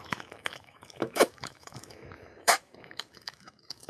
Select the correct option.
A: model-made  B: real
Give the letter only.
A